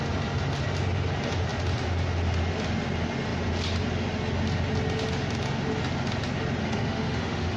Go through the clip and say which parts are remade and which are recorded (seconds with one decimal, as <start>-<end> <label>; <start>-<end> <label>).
0.0-6.6 recorded; 6.6-7.6 remade